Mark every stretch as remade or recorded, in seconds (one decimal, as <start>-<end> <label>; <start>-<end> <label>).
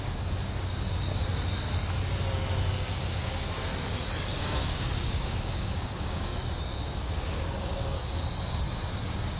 0.0-1.3 remade; 1.3-3.0 recorded; 3.0-3.7 remade; 3.7-4.4 recorded; 4.4-6.3 remade; 6.3-6.8 recorded; 6.8-9.4 remade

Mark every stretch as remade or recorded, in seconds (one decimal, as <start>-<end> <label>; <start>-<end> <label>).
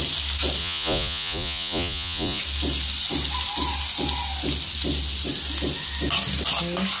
0.0-0.6 recorded; 0.6-2.4 remade; 2.4-7.0 recorded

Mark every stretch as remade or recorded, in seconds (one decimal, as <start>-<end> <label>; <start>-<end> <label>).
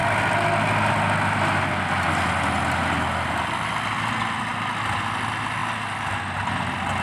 0.0-7.0 recorded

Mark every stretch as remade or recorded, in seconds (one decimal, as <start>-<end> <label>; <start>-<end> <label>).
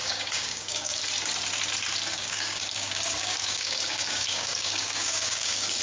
0.0-1.0 remade; 1.0-2.1 recorded; 2.1-5.8 remade